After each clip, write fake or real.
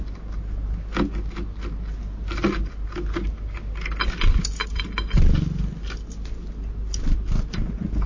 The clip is real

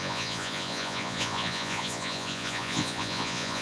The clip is fake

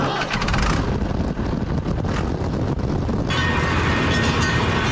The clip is real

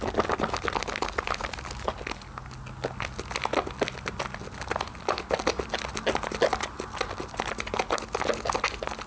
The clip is real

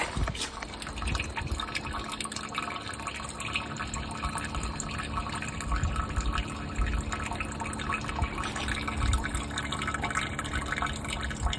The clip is real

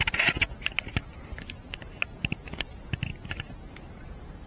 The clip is real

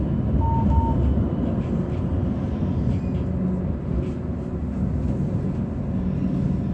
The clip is real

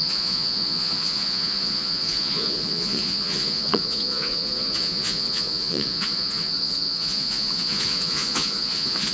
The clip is fake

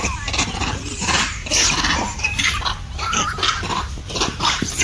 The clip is real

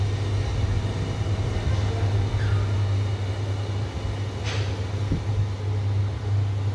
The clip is real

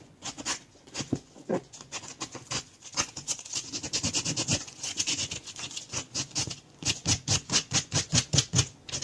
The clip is fake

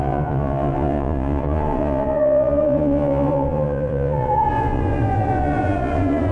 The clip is fake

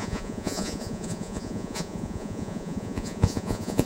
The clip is fake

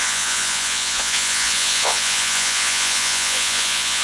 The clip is fake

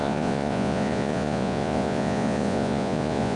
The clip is fake